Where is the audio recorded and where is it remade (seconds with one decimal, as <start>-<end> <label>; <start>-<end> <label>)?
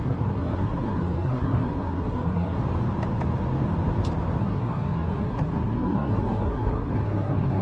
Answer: 0.0-2.6 remade; 2.6-4.4 recorded; 4.4-7.6 remade